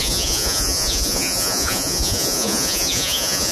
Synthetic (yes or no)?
yes